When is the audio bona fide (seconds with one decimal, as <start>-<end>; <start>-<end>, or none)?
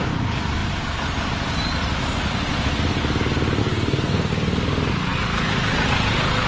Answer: 0.0-3.6; 4.3-6.5